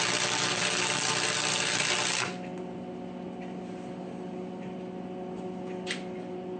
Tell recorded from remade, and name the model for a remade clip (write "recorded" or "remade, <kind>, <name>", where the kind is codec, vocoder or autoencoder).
recorded